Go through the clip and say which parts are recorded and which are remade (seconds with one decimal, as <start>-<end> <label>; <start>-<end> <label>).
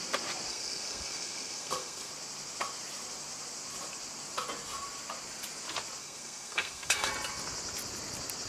0.0-0.5 recorded; 0.5-2.1 remade; 2.1-6.0 recorded; 6.0-7.1 remade; 7.1-8.5 recorded